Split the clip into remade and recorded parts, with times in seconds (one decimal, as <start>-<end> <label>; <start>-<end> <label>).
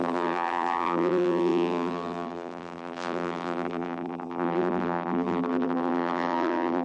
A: 0.0-6.8 remade